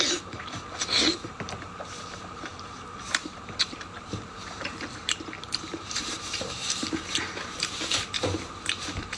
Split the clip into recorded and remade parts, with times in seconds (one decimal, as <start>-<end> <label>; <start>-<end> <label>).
0.0-9.2 remade